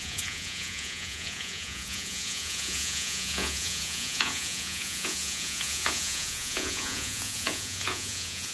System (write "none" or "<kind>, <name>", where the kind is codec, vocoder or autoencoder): vocoder, Vocos